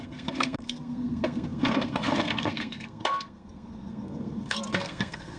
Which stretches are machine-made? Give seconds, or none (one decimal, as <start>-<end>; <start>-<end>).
0.0-5.4